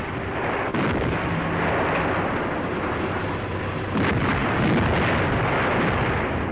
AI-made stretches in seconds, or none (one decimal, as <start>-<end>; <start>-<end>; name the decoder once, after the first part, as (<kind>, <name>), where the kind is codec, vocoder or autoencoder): 0.0-0.7 (vocoder, BigVGAN v2); 1.6-4.4; 5.2-6.5